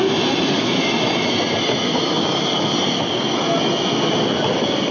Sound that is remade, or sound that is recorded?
recorded